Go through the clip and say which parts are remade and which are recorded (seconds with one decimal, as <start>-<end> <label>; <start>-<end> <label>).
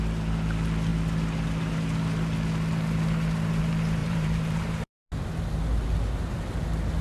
0.0-4.0 recorded; 4.0-4.9 remade; 4.9-7.0 recorded